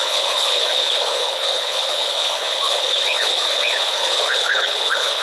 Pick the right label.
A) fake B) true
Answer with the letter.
A